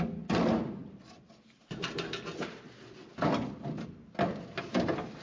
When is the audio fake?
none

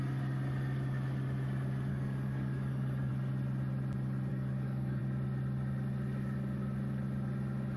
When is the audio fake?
1.9-3.1; 4.3-5.0

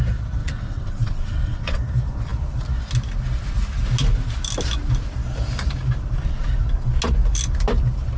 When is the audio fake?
0.4-1.8